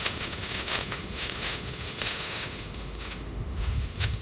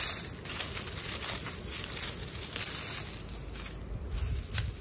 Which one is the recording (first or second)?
second